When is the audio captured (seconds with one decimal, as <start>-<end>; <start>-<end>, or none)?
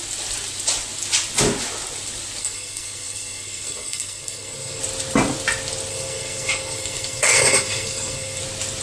0.0-2.4; 4.8-5.9; 8.4-8.8